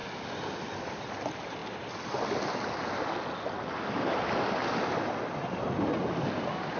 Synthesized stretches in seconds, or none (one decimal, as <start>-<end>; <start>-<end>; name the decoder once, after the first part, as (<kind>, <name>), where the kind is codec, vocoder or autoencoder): 0.0-1.1 (vocoder, BigVGAN v2)